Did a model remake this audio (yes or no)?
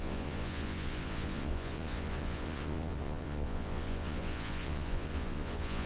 yes